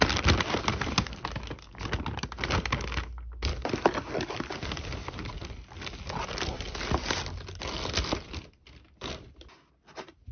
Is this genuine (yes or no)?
yes